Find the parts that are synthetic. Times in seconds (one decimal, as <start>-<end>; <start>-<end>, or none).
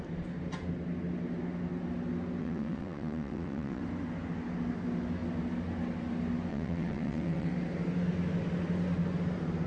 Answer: 2.4-3.8; 6.5-7.5